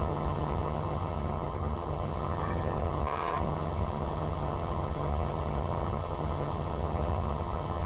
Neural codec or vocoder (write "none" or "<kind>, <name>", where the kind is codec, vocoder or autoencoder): vocoder, HiFi-GAN